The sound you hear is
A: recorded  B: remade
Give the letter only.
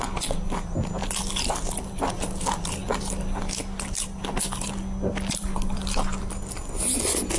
A